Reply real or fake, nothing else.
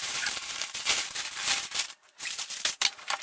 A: fake